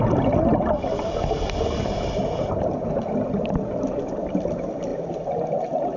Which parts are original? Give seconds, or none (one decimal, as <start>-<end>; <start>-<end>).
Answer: 0.0-6.0